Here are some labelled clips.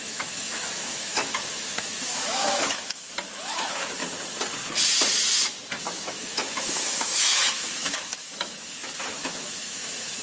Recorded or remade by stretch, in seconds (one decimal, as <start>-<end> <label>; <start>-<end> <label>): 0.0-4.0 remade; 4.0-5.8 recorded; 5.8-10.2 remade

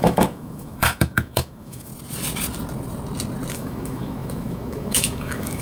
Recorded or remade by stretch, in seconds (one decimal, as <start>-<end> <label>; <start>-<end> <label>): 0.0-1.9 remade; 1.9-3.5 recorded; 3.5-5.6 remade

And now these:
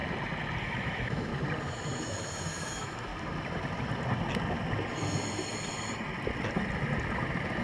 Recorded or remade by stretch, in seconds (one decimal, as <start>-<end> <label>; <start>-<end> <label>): 0.0-0.6 recorded; 0.6-1.3 remade; 1.3-2.0 recorded; 2.0-3.1 remade; 3.1-7.6 recorded

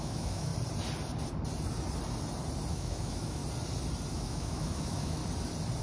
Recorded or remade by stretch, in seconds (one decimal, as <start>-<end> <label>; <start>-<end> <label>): 0.0-0.5 remade; 0.5-2.7 recorded; 2.7-3.4 remade; 3.4-4.1 recorded; 4.1-5.2 remade; 5.2-5.8 recorded

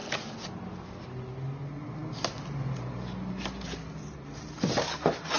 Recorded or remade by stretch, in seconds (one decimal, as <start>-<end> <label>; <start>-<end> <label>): 0.0-5.4 recorded